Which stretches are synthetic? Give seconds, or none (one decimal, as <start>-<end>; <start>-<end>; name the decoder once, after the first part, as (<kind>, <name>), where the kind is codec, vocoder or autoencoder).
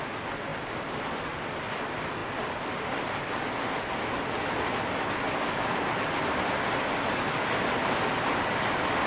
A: none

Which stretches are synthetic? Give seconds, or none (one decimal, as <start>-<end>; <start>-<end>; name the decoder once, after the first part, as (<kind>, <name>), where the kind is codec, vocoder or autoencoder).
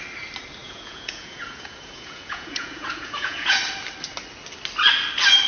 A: 0.6-3.6 (vocoder, Vocos)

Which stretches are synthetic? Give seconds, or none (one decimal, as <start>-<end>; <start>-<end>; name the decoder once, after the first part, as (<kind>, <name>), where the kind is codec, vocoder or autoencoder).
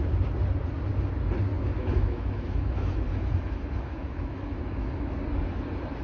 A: 1.5-5.1 (autoencoder, DAC-VAE)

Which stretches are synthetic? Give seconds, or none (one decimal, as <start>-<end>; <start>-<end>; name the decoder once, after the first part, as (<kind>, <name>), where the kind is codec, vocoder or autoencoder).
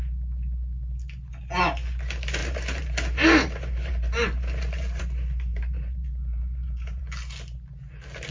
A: 2.4-5.0 (vocoder, BigVGAN v2); 5.5-7.0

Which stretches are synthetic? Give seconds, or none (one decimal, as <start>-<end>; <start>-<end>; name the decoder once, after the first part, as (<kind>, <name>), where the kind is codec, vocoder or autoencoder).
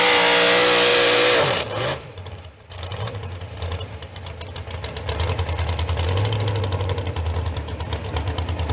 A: 0.9-4.2 (vocoder, BigVGAN v2)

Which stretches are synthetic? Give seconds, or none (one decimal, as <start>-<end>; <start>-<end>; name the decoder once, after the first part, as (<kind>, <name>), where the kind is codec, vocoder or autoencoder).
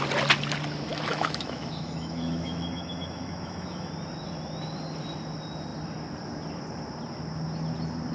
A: 0.9-3.9 (autoencoder, DAC-VAE)